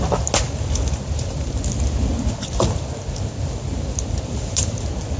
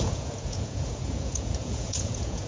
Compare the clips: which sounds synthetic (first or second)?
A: second